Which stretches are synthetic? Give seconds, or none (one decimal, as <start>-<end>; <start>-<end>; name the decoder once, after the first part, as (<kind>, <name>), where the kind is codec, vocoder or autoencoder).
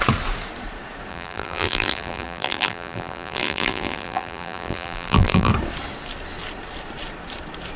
1.1-5.5 (vocoder, BigVGAN v2)